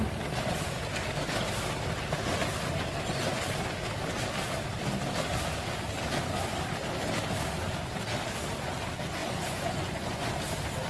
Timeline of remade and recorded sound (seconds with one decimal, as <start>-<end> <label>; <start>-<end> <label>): 0.0-9.2 recorded; 9.2-10.3 remade; 10.3-10.9 recorded

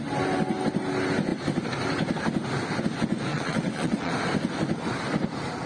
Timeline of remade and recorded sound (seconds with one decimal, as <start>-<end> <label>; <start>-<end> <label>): 0.0-3.3 recorded; 3.3-4.1 remade; 4.1-5.7 recorded

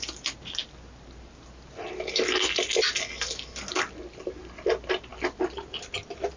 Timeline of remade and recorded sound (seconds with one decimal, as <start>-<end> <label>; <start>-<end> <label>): 0.0-6.4 recorded

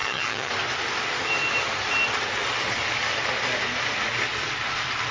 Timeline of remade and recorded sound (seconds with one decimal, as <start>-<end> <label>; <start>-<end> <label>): 0.0-0.5 remade; 0.5-5.1 recorded

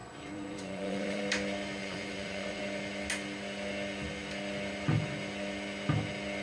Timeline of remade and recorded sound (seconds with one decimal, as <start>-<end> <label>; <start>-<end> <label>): 0.0-1.2 remade; 1.2-1.8 recorded; 1.8-2.6 remade; 2.6-6.4 recorded

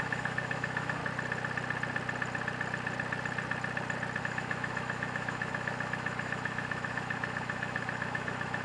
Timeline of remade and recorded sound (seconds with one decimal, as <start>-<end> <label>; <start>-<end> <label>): 0.0-1.0 remade; 1.0-4.2 recorded; 4.2-8.6 remade

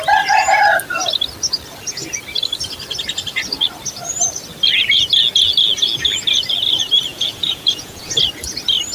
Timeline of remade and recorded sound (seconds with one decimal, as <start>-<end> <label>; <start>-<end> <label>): 0.0-7.1 recorded; 7.1-8.2 remade; 8.2-8.9 recorded

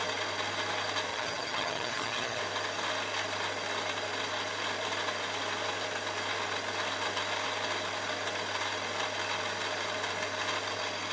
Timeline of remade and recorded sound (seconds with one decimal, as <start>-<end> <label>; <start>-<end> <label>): 0.0-1.1 recorded; 1.1-2.4 remade; 2.4-11.1 recorded